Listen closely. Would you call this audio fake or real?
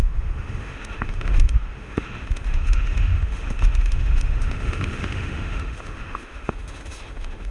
fake